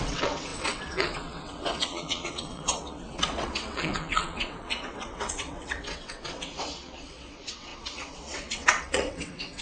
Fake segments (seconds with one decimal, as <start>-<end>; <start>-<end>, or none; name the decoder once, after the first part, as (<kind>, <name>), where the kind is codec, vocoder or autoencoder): 0.0-9.6 (vocoder, WaveNeXt)